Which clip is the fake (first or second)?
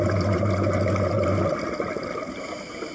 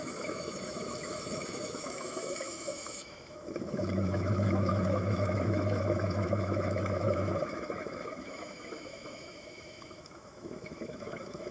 second